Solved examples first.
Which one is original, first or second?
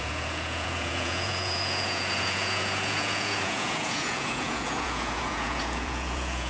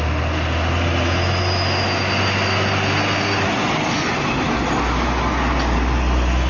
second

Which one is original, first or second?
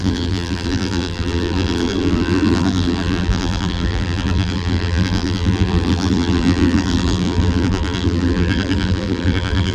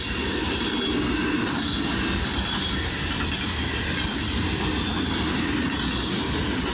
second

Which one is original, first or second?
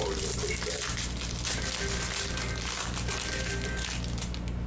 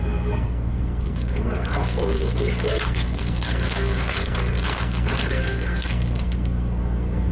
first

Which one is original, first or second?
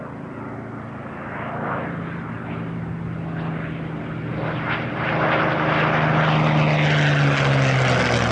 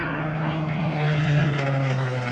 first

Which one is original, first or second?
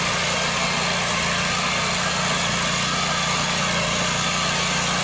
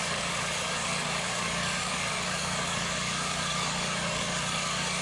first